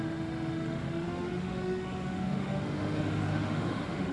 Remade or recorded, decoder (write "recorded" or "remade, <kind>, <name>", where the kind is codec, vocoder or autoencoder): remade, autoencoder, DAC-VAE